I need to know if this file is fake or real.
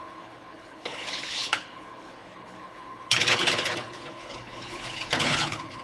fake